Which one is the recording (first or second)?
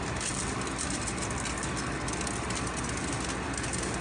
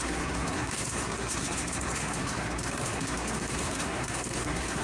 first